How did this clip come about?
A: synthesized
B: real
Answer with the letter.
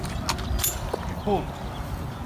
B